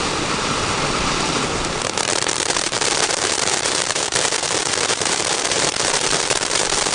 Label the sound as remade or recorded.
remade